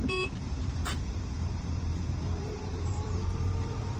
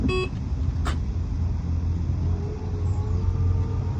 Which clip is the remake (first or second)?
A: first